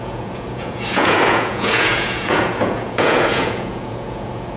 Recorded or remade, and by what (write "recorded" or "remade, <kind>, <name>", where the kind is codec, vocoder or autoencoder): remade, vocoder, Vocos